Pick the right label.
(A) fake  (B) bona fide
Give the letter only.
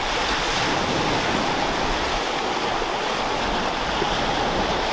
B